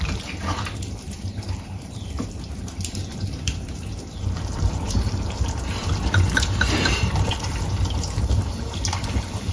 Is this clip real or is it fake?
fake